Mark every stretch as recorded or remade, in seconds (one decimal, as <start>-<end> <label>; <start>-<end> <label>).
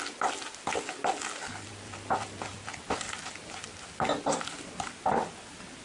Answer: 0.0-5.8 recorded